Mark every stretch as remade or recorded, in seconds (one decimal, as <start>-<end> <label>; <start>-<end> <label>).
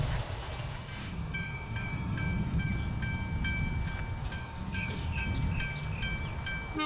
0.0-1.0 recorded; 1.0-2.6 remade; 2.6-4.2 recorded; 4.2-5.2 remade; 5.2-6.9 recorded